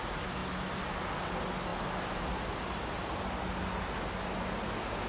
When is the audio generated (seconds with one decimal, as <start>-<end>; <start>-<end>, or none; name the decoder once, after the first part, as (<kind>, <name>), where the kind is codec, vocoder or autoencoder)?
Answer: none